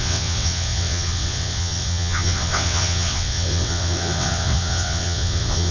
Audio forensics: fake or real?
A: fake